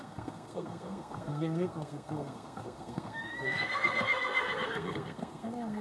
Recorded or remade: remade